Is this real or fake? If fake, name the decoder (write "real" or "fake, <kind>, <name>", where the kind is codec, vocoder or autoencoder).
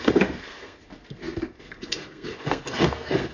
fake, codec, SNAC